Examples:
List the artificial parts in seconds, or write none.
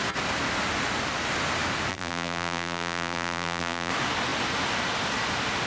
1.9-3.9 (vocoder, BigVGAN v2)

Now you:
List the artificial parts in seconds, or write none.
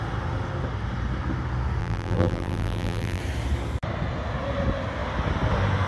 1.8-3.2 (vocoder, BigVGAN v2)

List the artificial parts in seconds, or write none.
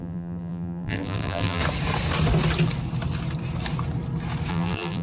0.0-1.6 (vocoder, BigVGAN v2); 4.5-5.0